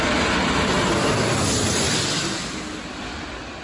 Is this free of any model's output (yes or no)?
yes